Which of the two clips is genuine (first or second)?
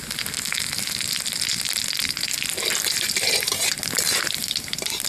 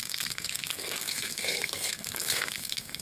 first